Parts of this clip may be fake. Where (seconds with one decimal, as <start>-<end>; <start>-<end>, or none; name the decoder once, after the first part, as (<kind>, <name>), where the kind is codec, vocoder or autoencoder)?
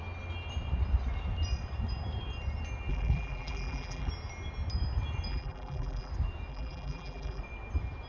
2.9-4.1 (vocoder, BigVGAN v2); 5.3-6.1; 6.5-7.4